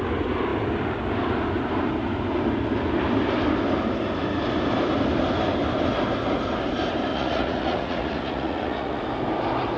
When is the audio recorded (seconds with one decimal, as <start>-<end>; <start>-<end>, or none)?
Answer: 0.0-7.1; 9.0-9.8